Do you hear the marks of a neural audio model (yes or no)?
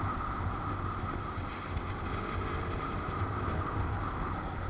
no